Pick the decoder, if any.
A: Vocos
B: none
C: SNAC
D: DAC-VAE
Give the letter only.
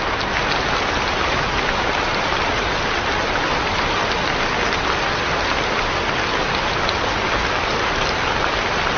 B